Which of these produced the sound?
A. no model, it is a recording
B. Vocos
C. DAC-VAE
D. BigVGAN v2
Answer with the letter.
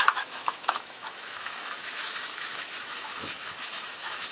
C